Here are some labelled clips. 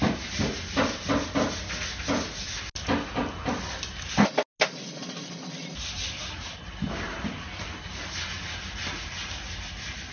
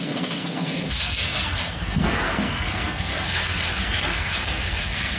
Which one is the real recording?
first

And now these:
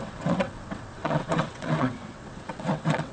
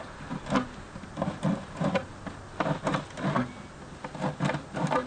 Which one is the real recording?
second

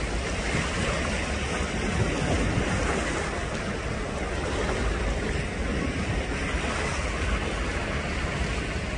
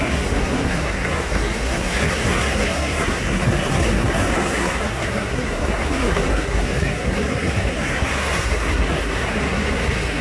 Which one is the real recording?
first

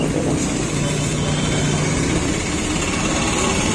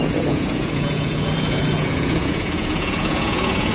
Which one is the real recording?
first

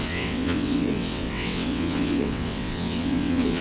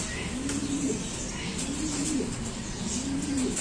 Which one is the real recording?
second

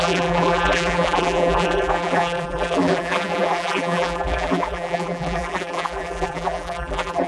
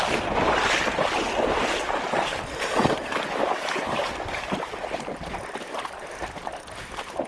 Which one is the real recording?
second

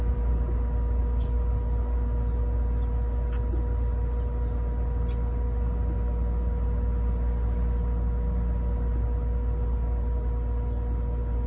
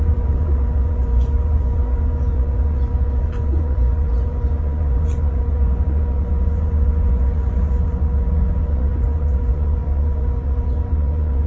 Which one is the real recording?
first